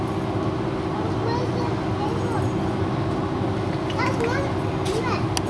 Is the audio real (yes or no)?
yes